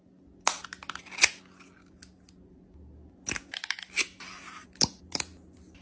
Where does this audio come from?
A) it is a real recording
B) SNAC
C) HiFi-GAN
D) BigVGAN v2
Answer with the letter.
A